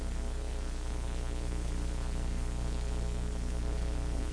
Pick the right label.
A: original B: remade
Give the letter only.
B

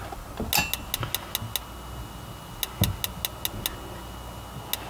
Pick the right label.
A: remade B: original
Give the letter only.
B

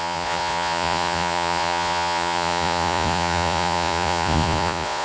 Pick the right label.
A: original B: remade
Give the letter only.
B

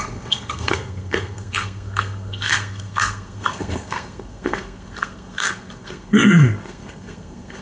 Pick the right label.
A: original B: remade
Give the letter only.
B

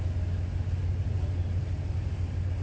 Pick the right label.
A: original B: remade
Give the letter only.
A